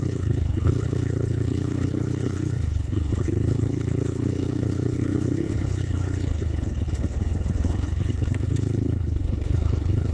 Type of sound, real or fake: fake